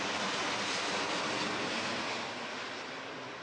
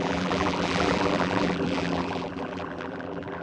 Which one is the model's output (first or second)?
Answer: second